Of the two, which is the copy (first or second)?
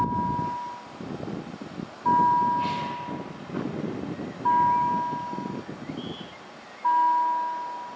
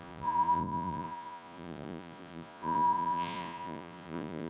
second